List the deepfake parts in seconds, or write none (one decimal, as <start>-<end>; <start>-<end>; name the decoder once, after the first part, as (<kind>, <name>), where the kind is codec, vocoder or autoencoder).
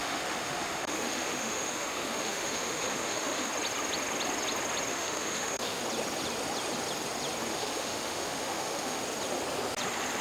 0.0-3.5 (autoencoder, DAC-VAE); 4.9-5.8; 7.5-9.0